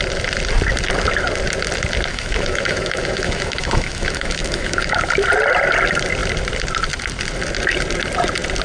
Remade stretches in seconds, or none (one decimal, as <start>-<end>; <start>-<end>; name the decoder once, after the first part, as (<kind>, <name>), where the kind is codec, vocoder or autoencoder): 2.1-5.1 (autoencoder, DAC-VAE)